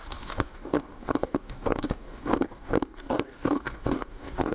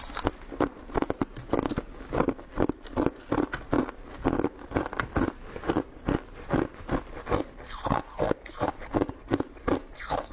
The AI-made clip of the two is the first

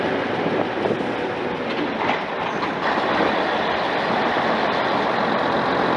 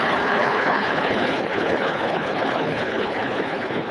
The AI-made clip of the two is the second